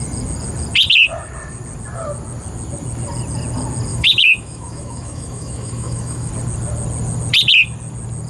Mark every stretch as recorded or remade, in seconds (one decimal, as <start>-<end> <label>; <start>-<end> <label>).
0.0-3.9 recorded; 3.9-6.3 remade; 6.3-8.3 recorded